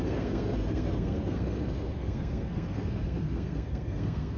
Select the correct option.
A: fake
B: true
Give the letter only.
A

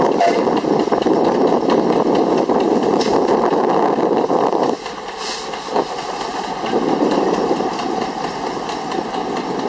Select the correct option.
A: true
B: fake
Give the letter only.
A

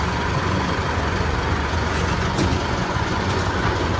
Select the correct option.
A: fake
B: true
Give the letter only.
A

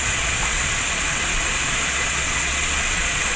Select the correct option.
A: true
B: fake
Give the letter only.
B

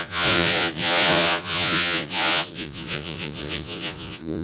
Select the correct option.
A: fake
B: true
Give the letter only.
A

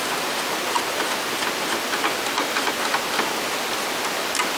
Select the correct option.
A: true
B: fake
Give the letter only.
A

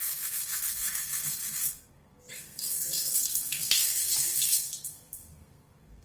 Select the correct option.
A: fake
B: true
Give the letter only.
A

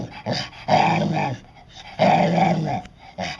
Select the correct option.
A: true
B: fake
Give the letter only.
A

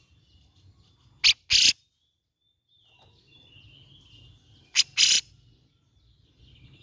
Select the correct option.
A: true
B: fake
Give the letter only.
A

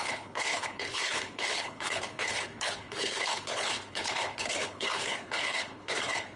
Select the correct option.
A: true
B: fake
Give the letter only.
B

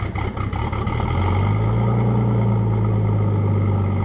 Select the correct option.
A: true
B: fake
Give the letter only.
A